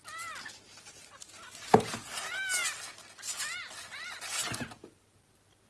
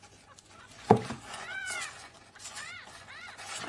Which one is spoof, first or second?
second